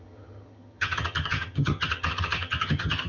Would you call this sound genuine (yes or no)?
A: no